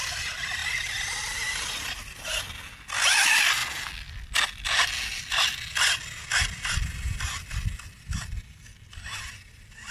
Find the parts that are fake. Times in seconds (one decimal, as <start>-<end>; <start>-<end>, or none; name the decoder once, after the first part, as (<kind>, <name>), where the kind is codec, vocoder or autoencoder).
none